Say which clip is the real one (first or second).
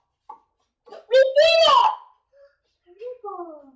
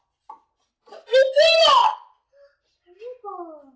second